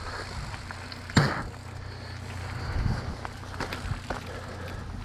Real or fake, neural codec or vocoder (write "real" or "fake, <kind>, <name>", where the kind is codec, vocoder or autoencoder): real